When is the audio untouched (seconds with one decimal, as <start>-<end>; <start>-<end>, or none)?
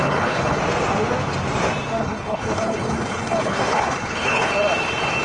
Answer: 0.6-2.0; 4.5-5.2